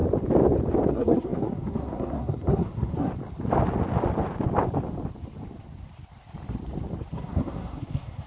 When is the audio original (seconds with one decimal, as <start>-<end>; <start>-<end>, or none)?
0.0-0.9; 3.1-7.1